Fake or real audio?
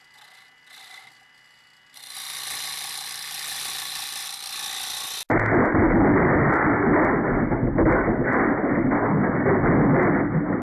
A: real